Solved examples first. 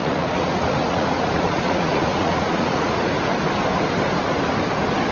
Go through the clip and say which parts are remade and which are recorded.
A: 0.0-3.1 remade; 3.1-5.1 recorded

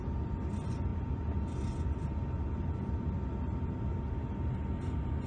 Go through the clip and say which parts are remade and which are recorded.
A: 0.0-5.3 recorded

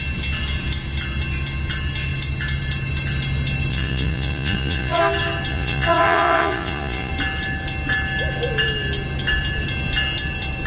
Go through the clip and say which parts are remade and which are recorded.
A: 0.0-3.7 recorded; 3.7-5.0 remade; 5.0-5.5 recorded; 5.5-7.1 remade; 7.1-10.7 recorded

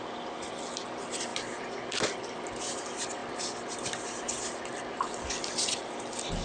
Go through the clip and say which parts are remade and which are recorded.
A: 0.0-6.4 recorded